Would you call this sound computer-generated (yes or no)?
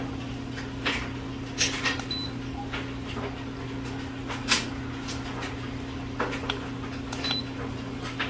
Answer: no